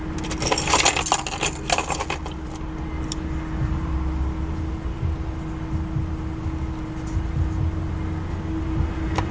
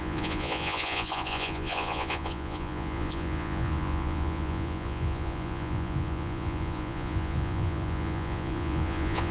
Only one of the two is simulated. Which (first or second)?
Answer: second